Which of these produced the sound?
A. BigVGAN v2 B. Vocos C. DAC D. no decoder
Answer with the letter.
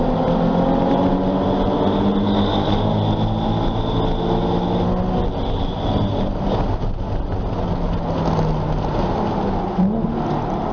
D